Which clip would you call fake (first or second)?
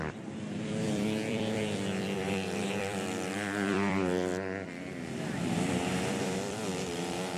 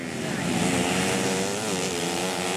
first